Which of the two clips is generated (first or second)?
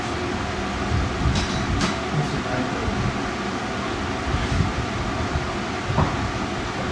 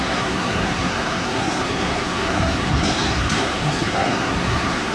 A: second